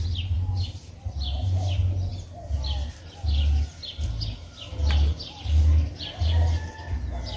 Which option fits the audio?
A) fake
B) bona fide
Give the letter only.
B